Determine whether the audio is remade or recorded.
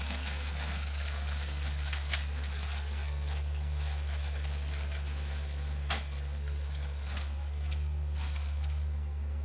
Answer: remade